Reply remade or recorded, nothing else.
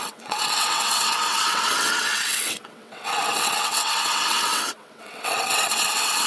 remade